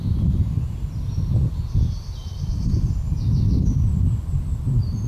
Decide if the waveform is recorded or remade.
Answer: recorded